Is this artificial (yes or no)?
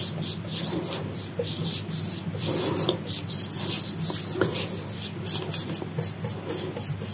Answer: no